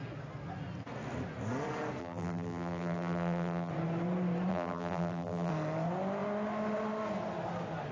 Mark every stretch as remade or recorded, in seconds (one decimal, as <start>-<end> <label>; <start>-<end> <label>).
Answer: 0.0-2.0 recorded; 2.0-3.7 remade; 3.7-4.5 recorded; 4.5-5.5 remade; 5.5-7.9 recorded